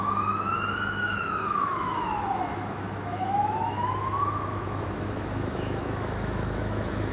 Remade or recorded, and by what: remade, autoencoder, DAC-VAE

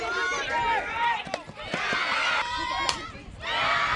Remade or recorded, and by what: recorded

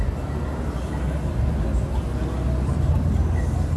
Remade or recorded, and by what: recorded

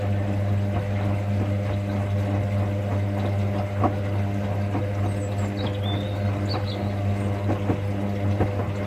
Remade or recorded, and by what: recorded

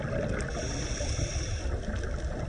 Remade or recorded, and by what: recorded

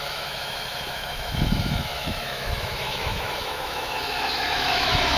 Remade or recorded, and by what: remade, autoencoder, DAC-VAE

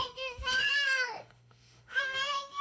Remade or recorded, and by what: remade, autoencoder, DAC-VAE